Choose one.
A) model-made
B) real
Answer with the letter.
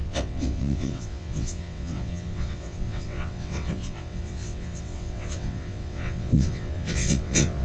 A